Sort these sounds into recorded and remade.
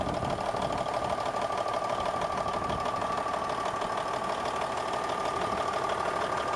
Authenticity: recorded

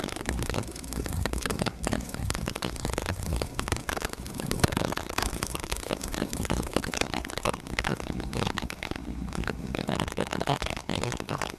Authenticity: remade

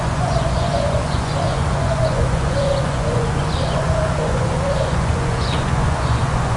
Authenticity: remade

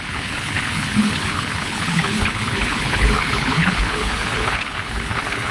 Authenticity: remade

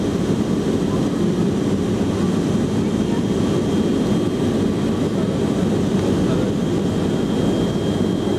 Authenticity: recorded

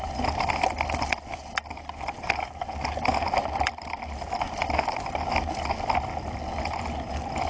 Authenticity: recorded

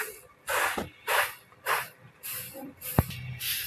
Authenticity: recorded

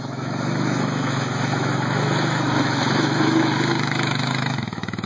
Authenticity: remade